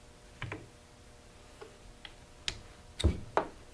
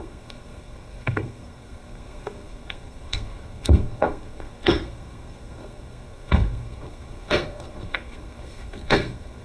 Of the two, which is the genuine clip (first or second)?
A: first